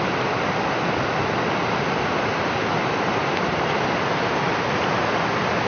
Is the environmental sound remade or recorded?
recorded